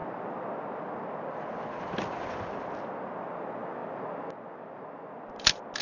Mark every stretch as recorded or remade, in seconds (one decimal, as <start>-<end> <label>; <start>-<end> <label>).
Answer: 0.0-5.8 recorded